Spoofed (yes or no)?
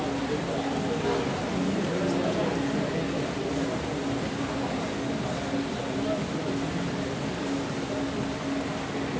no